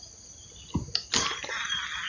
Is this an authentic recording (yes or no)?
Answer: yes